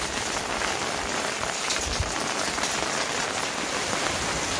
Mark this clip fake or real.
real